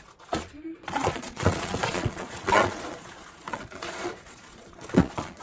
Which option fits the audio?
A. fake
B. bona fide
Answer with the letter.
A